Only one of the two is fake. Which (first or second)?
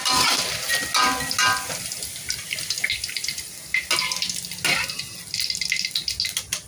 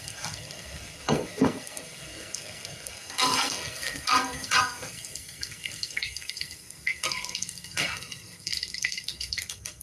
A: second